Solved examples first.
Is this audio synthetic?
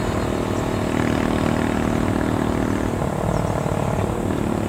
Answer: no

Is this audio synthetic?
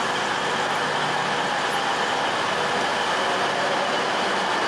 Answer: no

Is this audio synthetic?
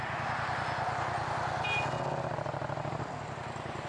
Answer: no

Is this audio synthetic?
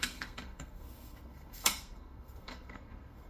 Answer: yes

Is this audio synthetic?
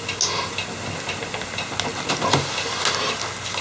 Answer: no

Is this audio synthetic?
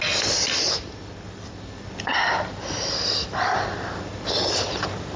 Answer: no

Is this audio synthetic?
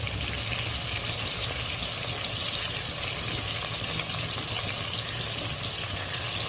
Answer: no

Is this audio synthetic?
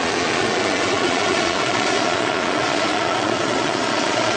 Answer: yes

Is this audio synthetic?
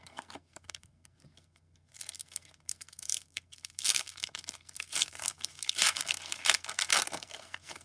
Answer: yes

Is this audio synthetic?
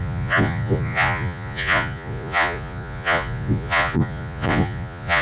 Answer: yes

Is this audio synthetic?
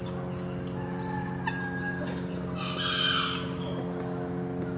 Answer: no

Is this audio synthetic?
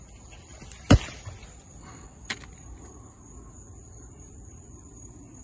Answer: no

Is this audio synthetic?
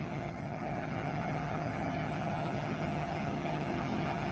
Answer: yes